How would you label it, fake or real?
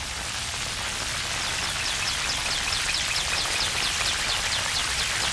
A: real